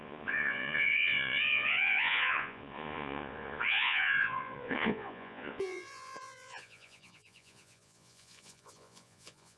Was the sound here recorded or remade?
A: remade